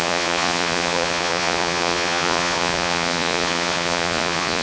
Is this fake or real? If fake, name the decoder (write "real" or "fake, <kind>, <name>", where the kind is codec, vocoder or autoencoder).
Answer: fake, vocoder, Vocos